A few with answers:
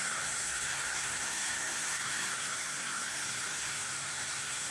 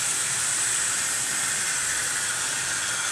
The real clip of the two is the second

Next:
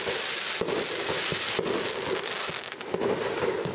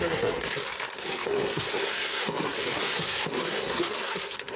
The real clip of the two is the first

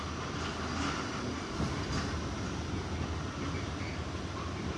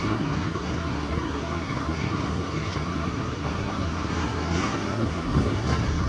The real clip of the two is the first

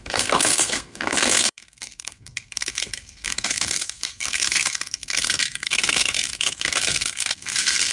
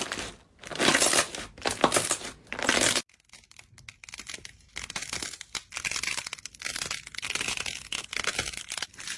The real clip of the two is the second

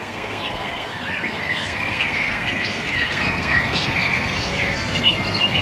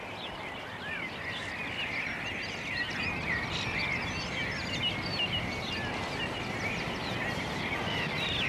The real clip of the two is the second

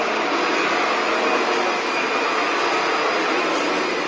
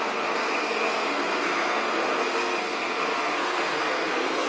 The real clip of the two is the first